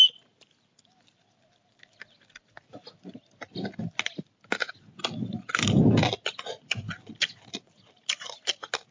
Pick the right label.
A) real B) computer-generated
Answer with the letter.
A